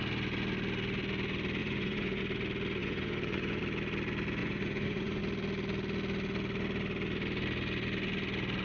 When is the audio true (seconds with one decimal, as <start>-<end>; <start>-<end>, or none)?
0.0-1.6; 2.2-2.8; 3.6-4.4; 5.2-8.6